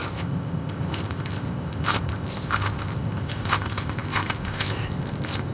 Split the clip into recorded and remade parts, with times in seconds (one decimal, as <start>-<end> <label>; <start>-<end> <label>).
0.0-5.5 remade